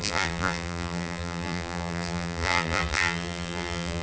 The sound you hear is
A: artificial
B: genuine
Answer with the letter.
A